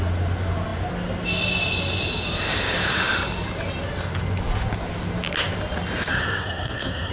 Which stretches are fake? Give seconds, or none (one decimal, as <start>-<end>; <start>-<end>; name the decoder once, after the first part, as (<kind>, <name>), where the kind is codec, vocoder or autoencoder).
6.1-7.1 (codec, SNAC)